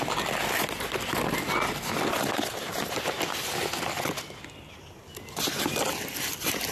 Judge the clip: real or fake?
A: real